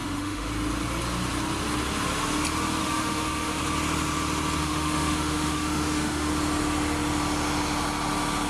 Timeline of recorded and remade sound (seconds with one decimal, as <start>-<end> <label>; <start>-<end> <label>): 0.0-0.5 remade; 0.5-2.8 recorded; 2.8-3.6 remade; 3.6-4.6 recorded; 4.6-6.3 remade; 6.3-8.5 recorded

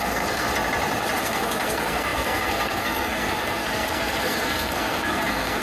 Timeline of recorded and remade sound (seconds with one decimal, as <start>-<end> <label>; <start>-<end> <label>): 0.0-0.5 remade; 0.5-1.2 recorded; 1.2-5.6 remade

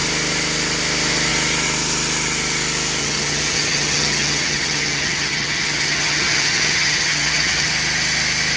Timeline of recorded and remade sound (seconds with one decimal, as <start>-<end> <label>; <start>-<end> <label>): 0.0-3.0 recorded; 3.0-7.7 remade; 7.7-8.6 recorded